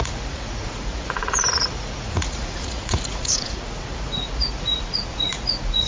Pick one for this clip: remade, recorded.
remade